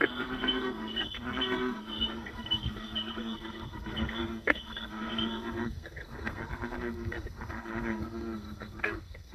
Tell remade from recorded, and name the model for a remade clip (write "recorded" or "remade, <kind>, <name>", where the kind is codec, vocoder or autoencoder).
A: remade, codec, SNAC